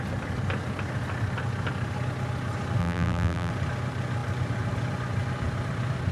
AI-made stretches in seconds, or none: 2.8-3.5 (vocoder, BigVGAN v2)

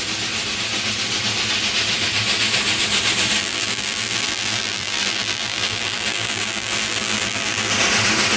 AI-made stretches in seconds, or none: 3.4-7.7 (vocoder, BigVGAN v2)

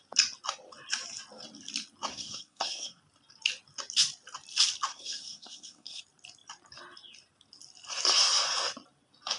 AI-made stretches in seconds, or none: 2.1-3.0 (codec, SNAC); 4.9-6.0

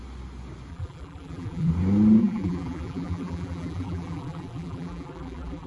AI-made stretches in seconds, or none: 0.7-1.7 (vocoder, BigVGAN v2); 2.2-5.7

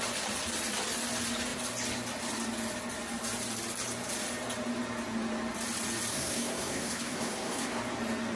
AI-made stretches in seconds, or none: 6.1-7.8 (codec, SNAC)

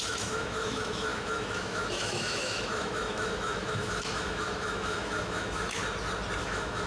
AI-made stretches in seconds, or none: 0.0-5.8 (autoencoder, DAC-VAE); 6.4-6.9